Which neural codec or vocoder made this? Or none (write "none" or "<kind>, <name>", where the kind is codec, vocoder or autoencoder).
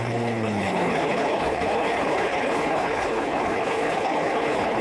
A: codec, HILCodec